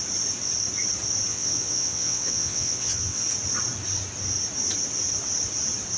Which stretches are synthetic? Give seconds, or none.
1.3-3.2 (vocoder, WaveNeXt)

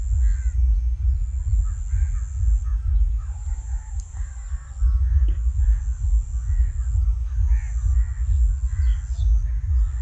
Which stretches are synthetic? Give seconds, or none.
2.7-4.7 (vocoder, BigVGAN v2)

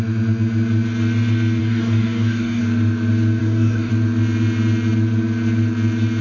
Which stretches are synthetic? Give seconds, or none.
1.6-2.6 (codec, DAC); 3.4-3.9

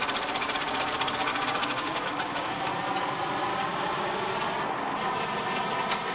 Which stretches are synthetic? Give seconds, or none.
1.3-2.6 (codec, DAC); 3.5-4.3